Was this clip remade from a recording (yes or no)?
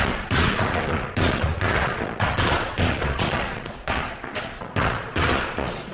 yes